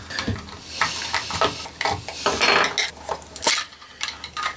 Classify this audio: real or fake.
real